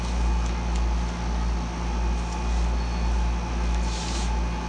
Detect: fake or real real